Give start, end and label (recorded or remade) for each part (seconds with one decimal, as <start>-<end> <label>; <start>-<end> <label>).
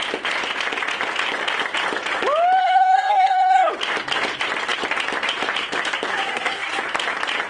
0.0-2.6 recorded; 2.6-3.7 remade; 3.7-6.1 recorded; 6.1-6.8 remade; 6.8-7.5 recorded